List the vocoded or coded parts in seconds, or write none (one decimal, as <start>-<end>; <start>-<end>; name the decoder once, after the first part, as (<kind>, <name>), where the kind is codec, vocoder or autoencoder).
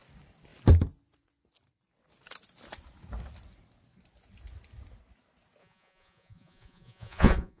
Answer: 5.6-7.6 (vocoder, Vocos)